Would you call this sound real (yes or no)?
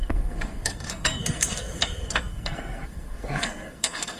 no